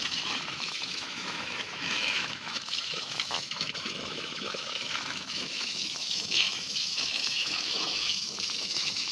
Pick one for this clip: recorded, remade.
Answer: remade